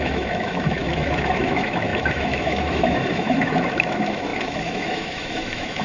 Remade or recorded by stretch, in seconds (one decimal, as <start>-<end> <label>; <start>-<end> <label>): 0.0-5.8 remade